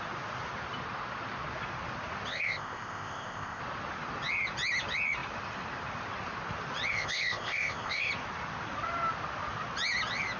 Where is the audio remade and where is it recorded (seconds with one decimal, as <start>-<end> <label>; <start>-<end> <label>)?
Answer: 0.0-2.3 recorded; 2.3-3.6 remade; 3.6-6.9 recorded; 6.9-8.1 remade; 8.1-10.4 recorded